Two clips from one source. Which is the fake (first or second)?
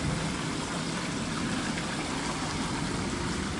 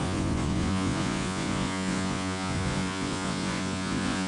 second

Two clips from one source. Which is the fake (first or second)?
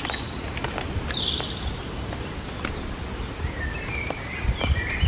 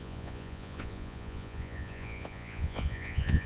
second